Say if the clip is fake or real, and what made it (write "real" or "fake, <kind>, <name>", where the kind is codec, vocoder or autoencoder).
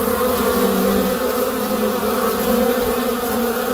real